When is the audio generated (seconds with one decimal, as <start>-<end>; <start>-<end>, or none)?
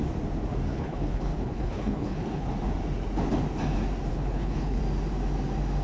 0.7-2.5; 4.1-4.8